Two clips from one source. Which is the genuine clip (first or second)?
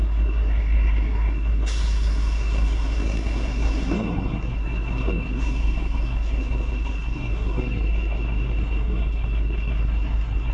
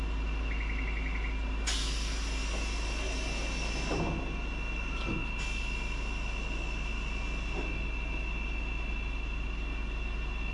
second